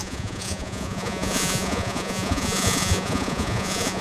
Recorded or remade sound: remade